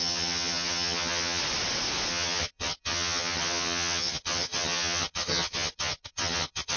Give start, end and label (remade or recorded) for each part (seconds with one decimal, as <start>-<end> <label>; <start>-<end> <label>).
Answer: 0.0-1.4 remade; 1.4-2.1 recorded; 2.1-6.8 remade